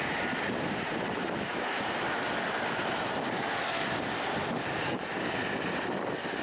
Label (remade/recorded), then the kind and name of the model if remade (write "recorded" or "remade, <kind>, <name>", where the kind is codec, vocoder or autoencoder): recorded